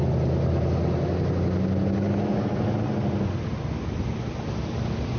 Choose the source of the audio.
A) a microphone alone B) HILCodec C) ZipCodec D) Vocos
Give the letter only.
A